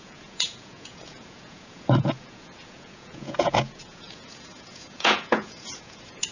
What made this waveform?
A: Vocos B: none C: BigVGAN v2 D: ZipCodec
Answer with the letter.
A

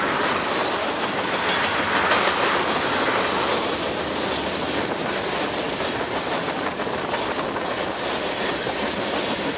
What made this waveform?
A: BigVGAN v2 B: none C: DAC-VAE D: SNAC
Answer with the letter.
B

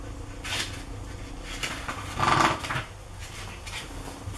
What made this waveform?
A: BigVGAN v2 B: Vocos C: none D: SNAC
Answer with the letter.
C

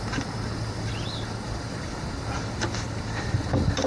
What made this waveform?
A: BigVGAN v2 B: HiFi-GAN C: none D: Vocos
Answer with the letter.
A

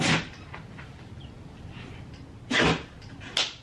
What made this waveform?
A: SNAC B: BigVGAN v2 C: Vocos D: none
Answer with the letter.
D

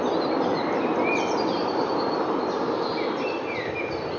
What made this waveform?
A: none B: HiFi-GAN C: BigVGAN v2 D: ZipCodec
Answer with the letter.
A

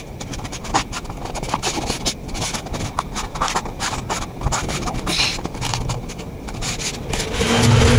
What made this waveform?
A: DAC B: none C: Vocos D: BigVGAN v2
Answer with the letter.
B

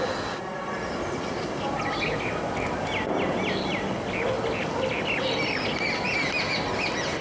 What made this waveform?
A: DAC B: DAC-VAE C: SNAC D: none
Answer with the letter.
D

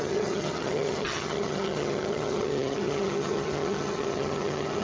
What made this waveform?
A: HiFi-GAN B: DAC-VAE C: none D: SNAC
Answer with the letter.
A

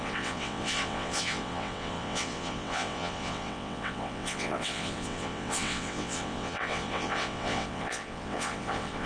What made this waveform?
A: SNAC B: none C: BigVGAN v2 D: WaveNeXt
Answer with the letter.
D